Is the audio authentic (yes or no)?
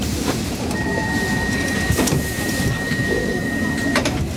no